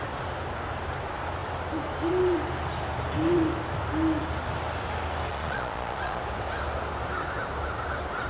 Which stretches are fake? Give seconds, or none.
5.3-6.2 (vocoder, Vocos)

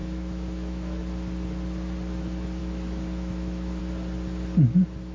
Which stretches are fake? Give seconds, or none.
0.0-1.0 (autoencoder, DAC-VAE); 2.6-3.8

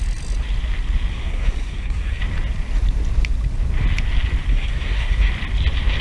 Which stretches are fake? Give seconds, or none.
1.1-2.2 (codec, SNAC); 4.5-5.3

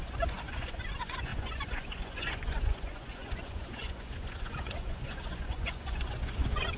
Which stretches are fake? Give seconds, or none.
0.0-6.8 (vocoder, Vocos)

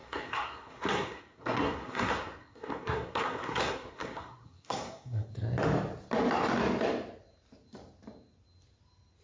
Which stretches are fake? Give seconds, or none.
0.0-5.3 (codec, SNAC)

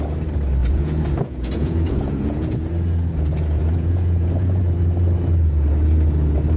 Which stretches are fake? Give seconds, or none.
0.6-4.6 (vocoder, Vocos)

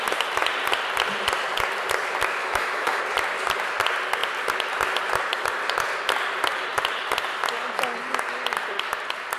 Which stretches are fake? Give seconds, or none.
2.4-3.0 (autoencoder, DAC-VAE)